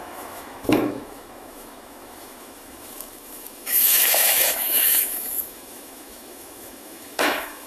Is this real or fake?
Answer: fake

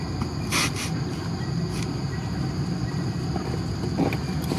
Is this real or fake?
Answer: real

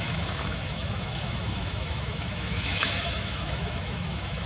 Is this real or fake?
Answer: fake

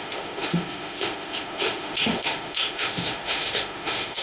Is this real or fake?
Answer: fake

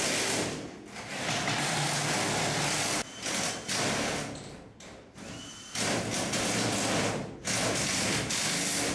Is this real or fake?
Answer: real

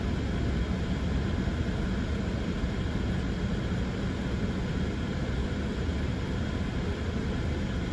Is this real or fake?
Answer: real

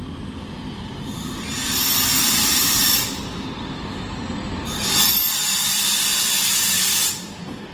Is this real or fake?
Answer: real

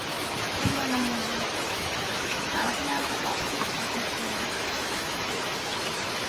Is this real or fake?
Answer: fake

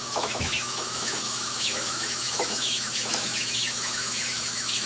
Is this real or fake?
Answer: fake